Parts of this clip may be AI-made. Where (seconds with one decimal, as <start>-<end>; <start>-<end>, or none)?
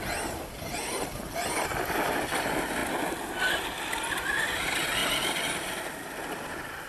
5.0-5.7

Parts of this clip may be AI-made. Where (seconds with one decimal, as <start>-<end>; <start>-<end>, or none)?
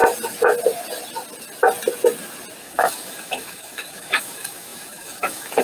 2.6-5.6